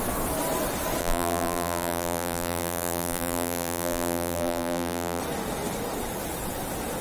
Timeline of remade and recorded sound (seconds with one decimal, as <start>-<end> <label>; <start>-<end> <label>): 0.0-1.0 recorded; 1.0-5.2 remade; 5.2-7.0 recorded